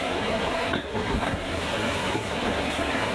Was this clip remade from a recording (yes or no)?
yes